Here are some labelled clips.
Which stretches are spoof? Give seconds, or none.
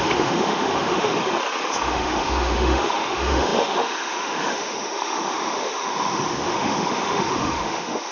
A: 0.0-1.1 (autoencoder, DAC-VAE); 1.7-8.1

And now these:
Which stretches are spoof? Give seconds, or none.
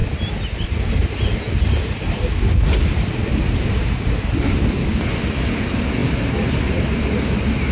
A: 4.0-7.7 (vocoder, BigVGAN v2)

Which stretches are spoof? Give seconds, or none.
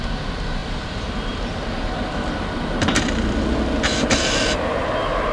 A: 0.6-2.3 (vocoder, BigVGAN v2)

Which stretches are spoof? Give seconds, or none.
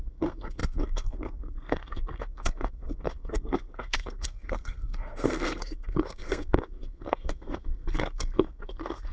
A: 0.0-9.1 (codec, SNAC)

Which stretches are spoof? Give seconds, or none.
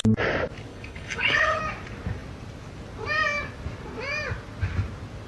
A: 0.7-1.6 (codec, HILCodec)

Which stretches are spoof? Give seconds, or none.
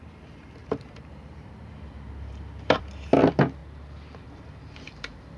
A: 0.6-2.8 (vocoder, BigVGAN v2); 3.6-5.4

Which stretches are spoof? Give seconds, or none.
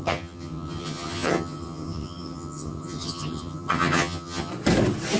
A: 0.0-4.5 (vocoder, HiFi-GAN)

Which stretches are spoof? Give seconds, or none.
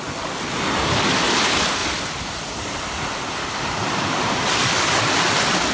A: 1.8-5.2 (vocoder, BigVGAN v2)